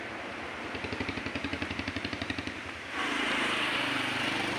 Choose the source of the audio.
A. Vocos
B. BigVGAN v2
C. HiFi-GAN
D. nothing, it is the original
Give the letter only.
B